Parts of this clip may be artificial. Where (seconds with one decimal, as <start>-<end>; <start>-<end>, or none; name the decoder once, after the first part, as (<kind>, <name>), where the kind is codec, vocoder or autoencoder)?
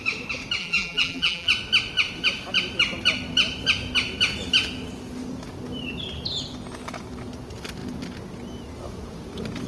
0.6-1.5 (vocoder, BigVGAN v2)